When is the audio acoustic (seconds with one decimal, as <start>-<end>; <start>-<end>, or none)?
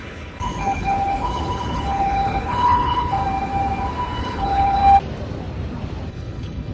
3.2-4.2; 4.8-6.1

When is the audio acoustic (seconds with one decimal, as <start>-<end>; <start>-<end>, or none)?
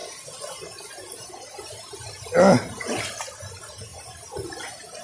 0.0-5.0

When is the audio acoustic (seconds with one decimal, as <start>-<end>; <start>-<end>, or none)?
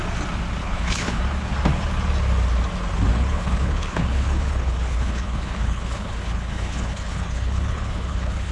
0.0-0.6; 1.2-3.1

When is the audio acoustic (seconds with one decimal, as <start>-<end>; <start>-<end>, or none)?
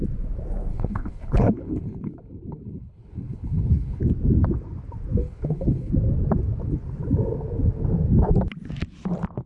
0.0-0.7; 4.0-5.2; 5.9-9.5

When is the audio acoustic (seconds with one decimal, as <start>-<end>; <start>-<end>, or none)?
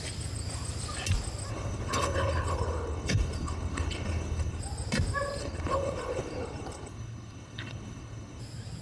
0.0-1.5; 4.6-5.4; 8.4-8.8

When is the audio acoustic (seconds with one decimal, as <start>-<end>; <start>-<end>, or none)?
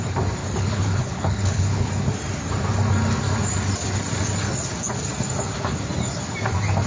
0.0-0.4; 1.9-6.9